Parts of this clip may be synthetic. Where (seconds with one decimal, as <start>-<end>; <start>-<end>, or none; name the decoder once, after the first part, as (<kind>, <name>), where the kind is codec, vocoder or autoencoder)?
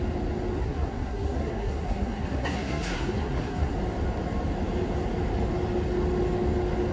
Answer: 0.6-3.7 (codec, SNAC)